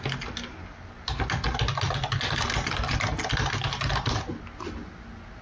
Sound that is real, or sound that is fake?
real